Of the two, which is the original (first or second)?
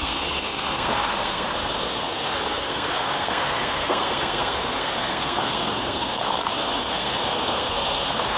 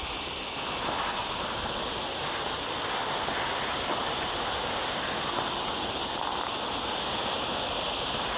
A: second